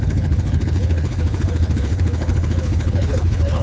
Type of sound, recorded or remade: remade